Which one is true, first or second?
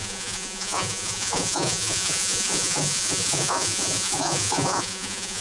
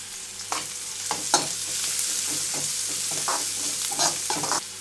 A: second